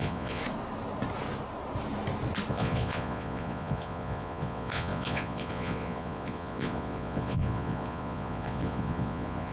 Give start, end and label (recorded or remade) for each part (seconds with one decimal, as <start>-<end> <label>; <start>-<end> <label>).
0.0-0.4 remade; 0.4-2.5 recorded; 2.5-9.5 remade